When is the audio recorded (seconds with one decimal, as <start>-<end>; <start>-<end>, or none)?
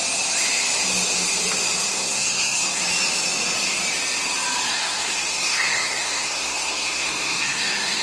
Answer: 0.0-1.9; 2.8-4.7